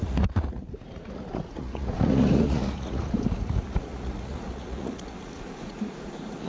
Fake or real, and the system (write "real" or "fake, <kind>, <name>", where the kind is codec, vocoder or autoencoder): fake, vocoder, Vocos